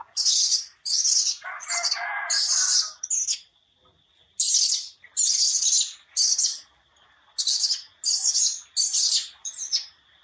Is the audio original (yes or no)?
yes